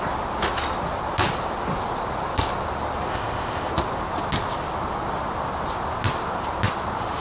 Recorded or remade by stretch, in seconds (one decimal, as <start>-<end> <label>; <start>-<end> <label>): 0.0-3.1 recorded; 3.1-3.7 remade; 3.7-7.2 recorded